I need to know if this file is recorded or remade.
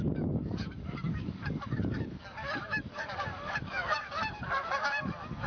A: remade